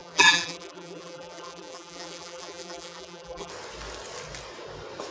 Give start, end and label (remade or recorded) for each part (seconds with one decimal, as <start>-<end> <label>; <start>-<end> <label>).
0.0-3.5 remade; 3.5-5.1 recorded